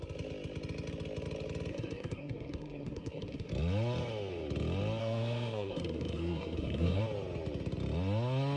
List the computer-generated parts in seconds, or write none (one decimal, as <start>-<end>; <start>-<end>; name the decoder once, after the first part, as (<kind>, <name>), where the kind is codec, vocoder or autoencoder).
1.7-3.5 (codec, SNAC); 5.0-7.0